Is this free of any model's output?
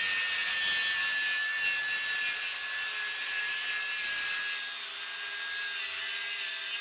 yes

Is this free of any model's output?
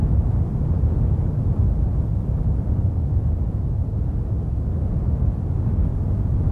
yes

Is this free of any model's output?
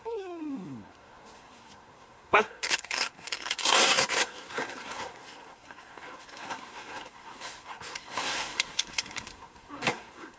no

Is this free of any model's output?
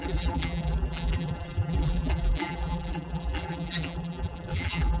no